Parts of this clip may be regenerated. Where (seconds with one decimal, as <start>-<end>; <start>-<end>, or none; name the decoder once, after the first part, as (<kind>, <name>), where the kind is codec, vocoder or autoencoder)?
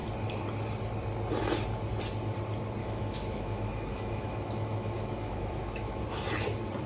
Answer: 2.8-6.0 (autoencoder, DAC-VAE)